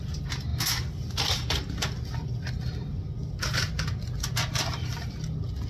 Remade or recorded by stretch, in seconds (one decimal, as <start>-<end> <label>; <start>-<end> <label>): 0.0-5.7 recorded